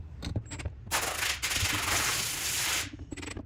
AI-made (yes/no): no